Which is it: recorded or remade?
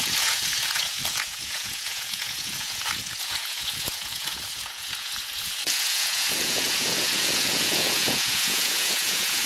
remade